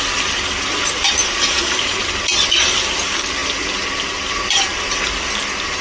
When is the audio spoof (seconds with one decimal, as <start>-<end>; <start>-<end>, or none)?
1.2-2.1